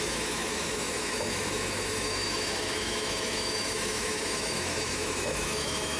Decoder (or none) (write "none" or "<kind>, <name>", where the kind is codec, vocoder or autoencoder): autoencoder, DAC-VAE